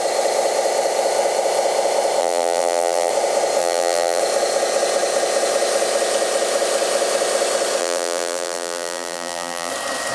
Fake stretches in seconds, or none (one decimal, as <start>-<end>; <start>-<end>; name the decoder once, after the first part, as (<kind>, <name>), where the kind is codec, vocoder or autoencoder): 2.2-3.1 (vocoder, BigVGAN v2); 3.6-4.2; 7.8-9.7